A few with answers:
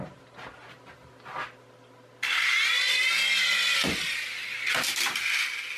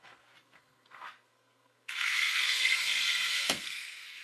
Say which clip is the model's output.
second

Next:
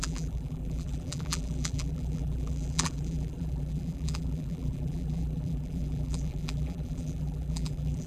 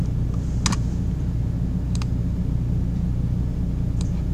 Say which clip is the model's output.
first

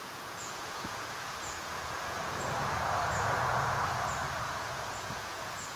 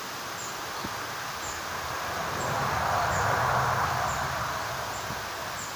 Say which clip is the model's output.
first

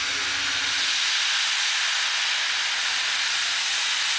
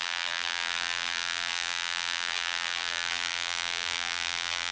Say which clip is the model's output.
second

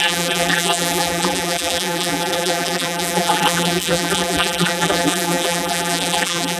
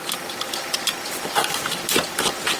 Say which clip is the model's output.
first